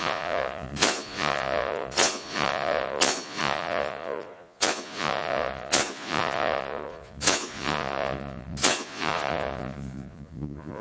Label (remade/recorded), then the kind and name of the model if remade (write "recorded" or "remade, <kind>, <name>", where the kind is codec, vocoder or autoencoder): remade, vocoder, Vocos